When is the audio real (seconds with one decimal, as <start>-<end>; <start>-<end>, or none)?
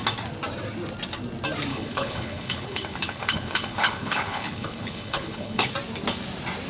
0.0-1.7; 5.7-6.7